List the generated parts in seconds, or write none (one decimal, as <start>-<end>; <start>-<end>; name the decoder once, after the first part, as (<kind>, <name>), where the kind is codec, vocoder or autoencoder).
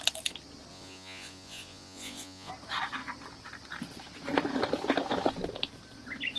0.7-2.5 (vocoder, Vocos)